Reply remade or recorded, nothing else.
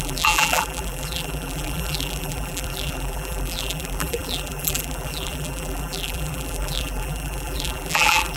remade